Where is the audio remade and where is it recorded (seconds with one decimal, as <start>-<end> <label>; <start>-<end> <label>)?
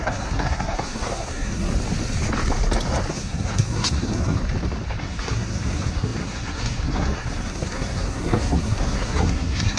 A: 0.0-1.7 remade; 1.7-3.1 recorded; 3.1-4.4 remade; 4.4-5.0 recorded; 5.0-9.8 remade